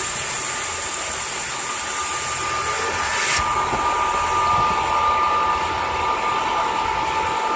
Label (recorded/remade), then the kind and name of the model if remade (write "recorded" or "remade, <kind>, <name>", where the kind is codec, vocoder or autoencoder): recorded